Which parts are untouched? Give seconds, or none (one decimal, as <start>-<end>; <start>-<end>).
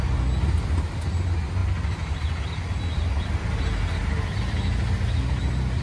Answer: 0.0-5.8